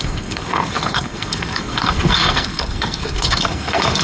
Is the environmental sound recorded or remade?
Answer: remade